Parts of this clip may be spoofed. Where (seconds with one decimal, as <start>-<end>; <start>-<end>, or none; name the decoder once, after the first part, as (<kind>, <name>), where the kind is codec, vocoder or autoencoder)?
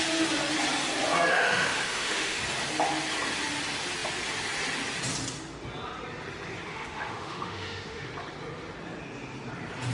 1.3-2.4 (autoencoder, DAC-VAE); 6.7-8.1